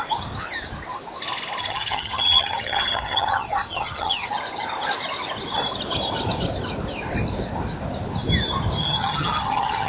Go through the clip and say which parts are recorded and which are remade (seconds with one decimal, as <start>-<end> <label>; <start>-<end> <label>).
0.0-1.6 recorded; 1.6-4.3 remade; 4.3-8.8 recorded; 8.8-9.9 remade